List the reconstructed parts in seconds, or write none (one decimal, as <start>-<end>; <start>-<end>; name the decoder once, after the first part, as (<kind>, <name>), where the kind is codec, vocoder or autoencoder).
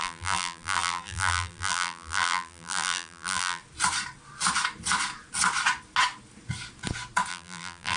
0.0-3.6 (vocoder, BigVGAN v2); 7.3-8.0